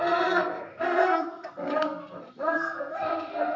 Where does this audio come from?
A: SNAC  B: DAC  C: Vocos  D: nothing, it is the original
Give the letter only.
A